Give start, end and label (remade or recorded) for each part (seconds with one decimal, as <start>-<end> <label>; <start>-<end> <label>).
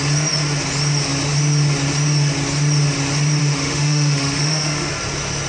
0.0-3.4 recorded; 3.4-4.9 remade; 4.9-5.5 recorded